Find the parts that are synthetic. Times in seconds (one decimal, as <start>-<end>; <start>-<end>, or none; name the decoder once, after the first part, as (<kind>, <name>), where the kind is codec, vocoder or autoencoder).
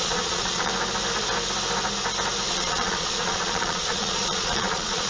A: 0.0-0.7 (vocoder, Vocos); 2.5-5.1